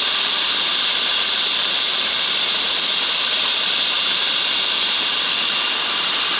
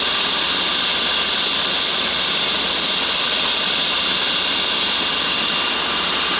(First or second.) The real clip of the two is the second